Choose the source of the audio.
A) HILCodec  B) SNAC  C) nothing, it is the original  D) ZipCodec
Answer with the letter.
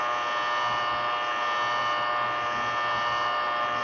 C